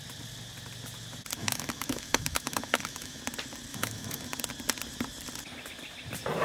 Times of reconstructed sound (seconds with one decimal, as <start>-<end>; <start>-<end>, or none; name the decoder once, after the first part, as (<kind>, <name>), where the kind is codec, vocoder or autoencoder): 1.4-3.2 (autoencoder, DAC-VAE); 3.7-4.4